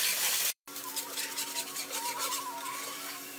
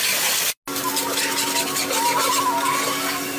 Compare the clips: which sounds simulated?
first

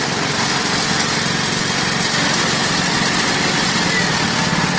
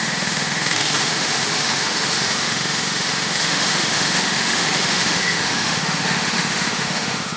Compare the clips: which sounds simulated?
second